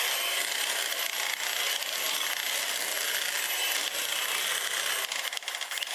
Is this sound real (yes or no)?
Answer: yes